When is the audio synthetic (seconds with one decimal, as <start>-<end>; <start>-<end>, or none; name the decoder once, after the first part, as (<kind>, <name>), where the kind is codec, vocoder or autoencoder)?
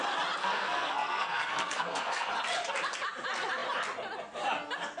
0.4-2.3 (codec, SNAC)